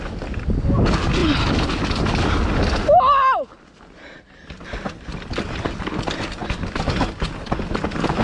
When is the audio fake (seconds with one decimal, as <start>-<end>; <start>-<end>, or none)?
none